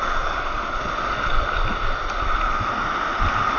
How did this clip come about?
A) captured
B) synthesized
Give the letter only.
A